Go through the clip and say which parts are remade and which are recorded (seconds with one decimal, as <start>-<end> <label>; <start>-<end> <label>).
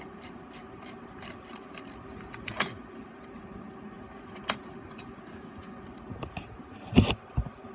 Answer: 0.0-7.7 recorded